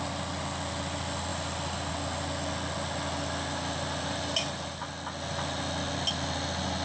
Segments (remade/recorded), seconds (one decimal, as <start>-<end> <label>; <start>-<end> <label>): 0.0-6.8 recorded